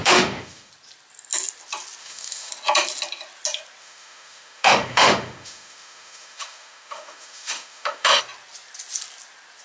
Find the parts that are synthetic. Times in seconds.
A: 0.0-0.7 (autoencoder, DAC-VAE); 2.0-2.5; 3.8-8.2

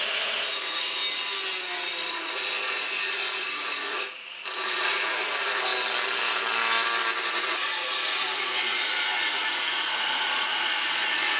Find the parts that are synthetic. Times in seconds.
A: 0.0-1.0 (vocoder, Vocos); 2.1-5.7; 7.3-11.4

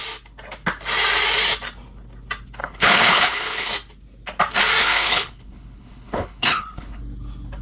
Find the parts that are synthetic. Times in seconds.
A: 2.6-3.7 (codec, HILCodec); 4.8-7.0